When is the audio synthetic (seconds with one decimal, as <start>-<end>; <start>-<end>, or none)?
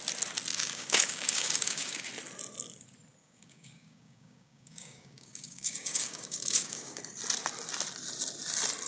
0.5-2.1; 3.2-7.0